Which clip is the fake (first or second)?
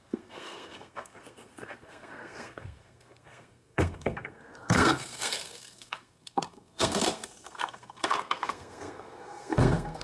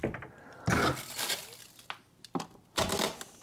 first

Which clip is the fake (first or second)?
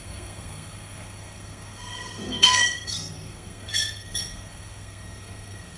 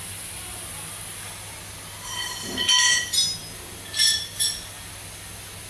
first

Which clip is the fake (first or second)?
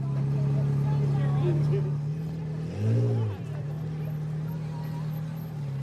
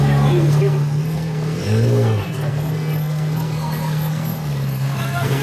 second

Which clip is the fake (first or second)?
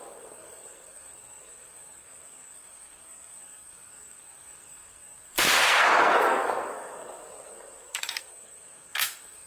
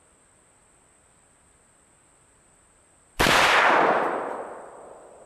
first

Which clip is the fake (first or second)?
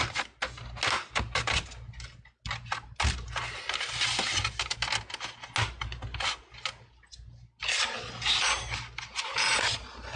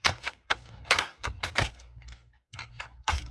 second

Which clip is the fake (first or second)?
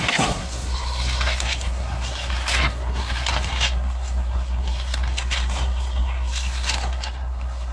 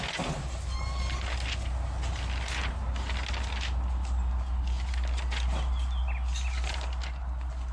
first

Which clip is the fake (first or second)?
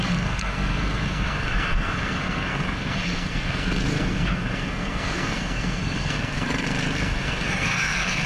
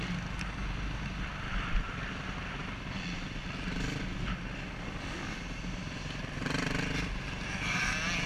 first